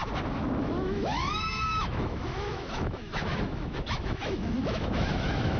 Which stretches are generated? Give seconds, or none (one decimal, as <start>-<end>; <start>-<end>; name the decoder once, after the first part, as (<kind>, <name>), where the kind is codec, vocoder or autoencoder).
0.6-5.6 (autoencoder, DAC-VAE)